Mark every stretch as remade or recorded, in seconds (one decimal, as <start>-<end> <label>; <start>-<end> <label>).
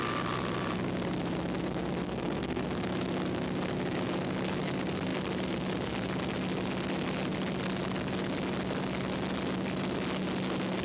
0.0-2.0 recorded; 2.0-2.6 remade; 2.6-10.8 recorded